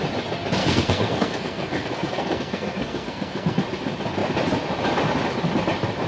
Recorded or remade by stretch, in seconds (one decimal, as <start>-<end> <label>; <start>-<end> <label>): 0.0-0.6 recorded; 0.6-3.6 remade; 3.6-6.1 recorded